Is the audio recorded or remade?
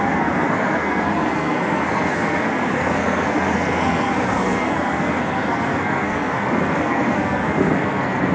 remade